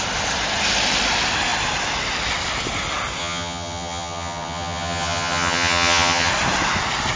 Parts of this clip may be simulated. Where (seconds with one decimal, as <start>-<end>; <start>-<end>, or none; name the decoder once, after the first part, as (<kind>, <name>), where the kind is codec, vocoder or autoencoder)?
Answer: 3.2-6.3 (vocoder, HiFi-GAN)